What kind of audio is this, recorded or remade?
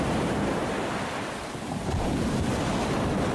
recorded